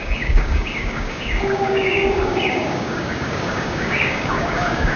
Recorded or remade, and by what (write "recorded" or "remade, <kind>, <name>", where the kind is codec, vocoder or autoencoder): remade, codec, DAC